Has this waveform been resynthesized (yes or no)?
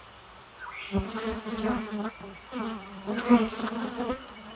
yes